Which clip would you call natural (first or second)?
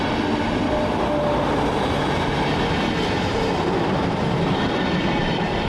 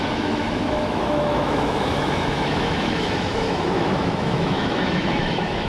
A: first